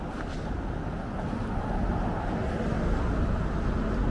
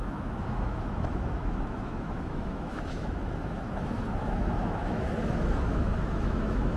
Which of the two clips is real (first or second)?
first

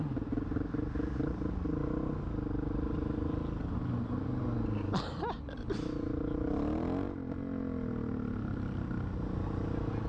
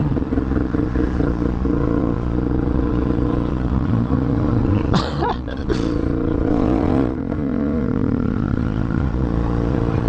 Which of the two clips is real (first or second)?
first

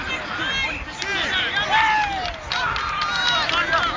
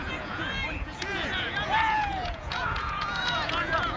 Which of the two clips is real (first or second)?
first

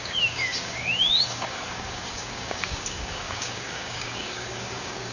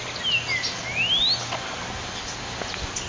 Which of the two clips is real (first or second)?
second